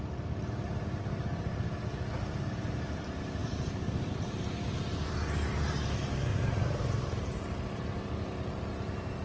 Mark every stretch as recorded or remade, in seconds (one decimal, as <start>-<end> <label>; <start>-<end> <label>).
0.0-3.4 recorded; 3.4-5.1 remade; 5.1-6.3 recorded; 6.3-6.8 remade; 6.8-9.2 recorded